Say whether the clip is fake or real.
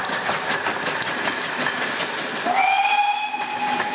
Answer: real